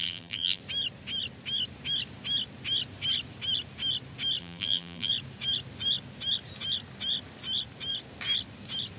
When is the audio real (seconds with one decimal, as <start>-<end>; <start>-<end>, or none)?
0.6-4.4; 5.1-9.0